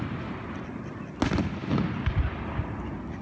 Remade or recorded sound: recorded